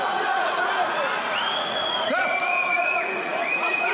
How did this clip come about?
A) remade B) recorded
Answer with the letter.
A